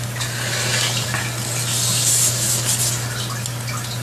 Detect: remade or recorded recorded